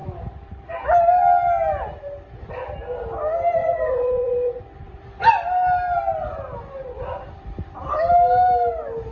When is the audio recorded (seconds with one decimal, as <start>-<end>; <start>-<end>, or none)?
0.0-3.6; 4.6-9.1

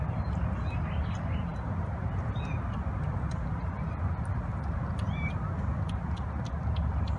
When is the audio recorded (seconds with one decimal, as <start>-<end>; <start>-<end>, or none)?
0.0-7.2

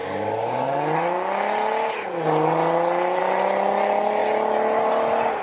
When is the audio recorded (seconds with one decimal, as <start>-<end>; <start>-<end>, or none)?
0.0-5.4

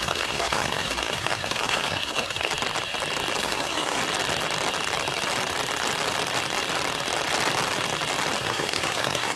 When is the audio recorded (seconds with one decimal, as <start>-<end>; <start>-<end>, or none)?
2.5-3.4; 4.0-8.4

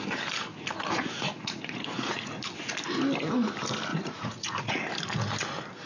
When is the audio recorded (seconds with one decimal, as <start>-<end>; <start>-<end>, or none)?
0.0-0.5; 2.3-3.9; 4.7-5.9

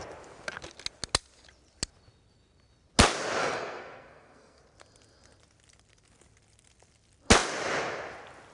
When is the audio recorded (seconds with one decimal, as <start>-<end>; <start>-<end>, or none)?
0.0-3.4; 4.6-8.5

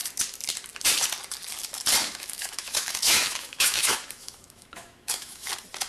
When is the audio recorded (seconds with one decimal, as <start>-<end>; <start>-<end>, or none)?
0.0-2.0; 5.5-5.9